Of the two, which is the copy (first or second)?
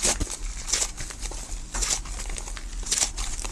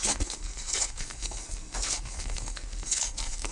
second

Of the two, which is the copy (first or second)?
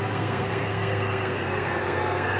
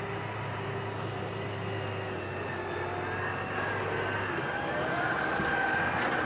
first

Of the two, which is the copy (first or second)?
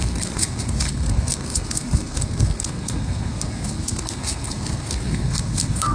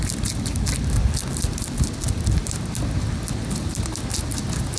first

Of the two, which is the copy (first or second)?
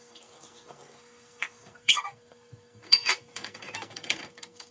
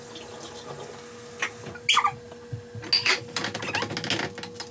first